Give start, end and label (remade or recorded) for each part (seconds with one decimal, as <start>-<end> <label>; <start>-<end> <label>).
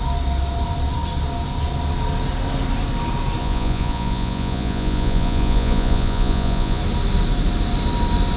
0.0-3.4 recorded; 3.4-6.8 remade; 6.8-8.4 recorded